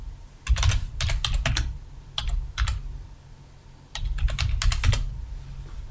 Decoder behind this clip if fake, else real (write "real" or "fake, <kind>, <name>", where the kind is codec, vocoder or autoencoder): real